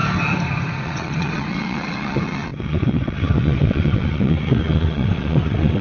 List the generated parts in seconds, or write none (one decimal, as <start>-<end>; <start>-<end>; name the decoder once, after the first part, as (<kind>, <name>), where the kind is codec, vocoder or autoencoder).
0.8-5.8 (vocoder, WaveNeXt)